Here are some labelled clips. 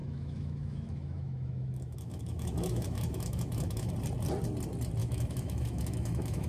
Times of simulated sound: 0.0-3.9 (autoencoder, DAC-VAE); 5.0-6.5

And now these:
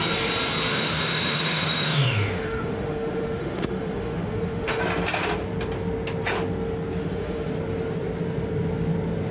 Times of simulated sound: 0.7-4.8 (autoencoder, DAC-VAE); 7.0-7.5

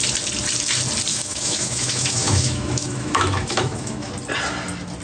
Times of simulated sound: 1.1-4.1 (autoencoder, DAC-VAE)

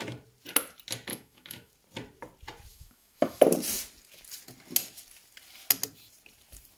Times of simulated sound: 1.1-1.7 (autoencoder, DAC-VAE); 2.7-3.4

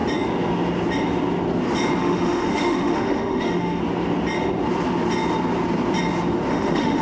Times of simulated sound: 2.0-3.8 (autoencoder, DAC-VAE); 6.5-7.0

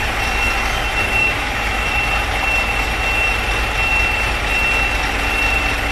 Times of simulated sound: 1.2-1.9 (autoencoder, DAC-VAE)